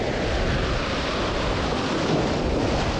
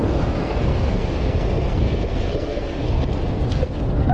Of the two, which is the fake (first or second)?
second